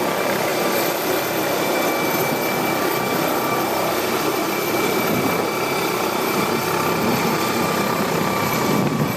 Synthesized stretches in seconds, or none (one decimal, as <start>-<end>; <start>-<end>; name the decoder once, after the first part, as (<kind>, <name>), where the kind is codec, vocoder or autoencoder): none